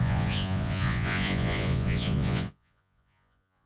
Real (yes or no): no